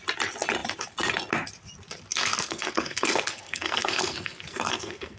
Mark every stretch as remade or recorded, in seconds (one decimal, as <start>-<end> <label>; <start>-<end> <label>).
0.0-2.1 recorded; 2.1-5.2 remade